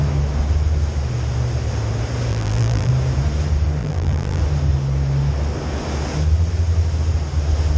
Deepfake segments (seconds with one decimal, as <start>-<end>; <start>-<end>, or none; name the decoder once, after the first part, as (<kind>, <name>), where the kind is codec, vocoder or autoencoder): 2.3-2.9 (vocoder, BigVGAN v2); 3.8-4.4